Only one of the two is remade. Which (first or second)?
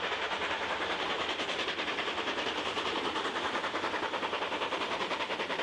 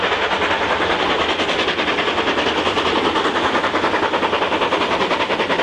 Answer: first